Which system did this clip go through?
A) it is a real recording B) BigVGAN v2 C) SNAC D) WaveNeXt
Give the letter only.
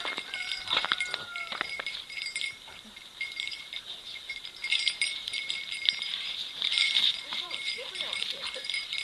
B